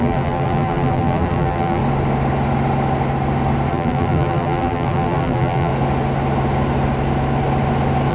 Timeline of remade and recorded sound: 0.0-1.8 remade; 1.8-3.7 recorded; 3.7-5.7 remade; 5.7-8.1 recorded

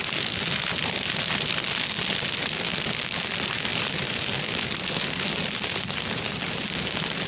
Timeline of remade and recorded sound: 0.0-7.3 recorded

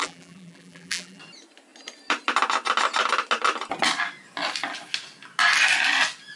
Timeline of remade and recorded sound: 0.0-1.2 remade; 1.2-6.4 recorded

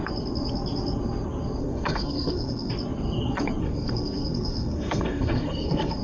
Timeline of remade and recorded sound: 0.0-1.6 recorded; 1.6-2.7 remade; 2.7-3.6 recorded; 3.6-6.0 remade

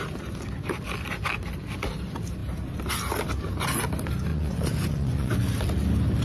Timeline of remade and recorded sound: 0.0-4.3 recorded; 4.3-5.3 remade; 5.3-6.2 recorded

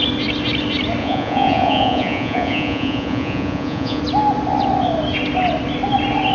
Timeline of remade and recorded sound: 0.0-1.0 recorded; 1.0-4.0 remade; 4.0-6.3 recorded